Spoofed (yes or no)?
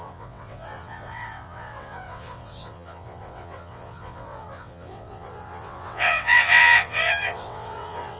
yes